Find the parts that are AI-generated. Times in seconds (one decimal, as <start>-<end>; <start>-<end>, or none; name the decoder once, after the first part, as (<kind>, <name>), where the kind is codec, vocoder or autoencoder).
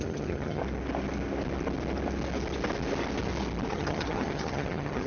0.0-0.6 (vocoder, HiFi-GAN); 3.7-5.1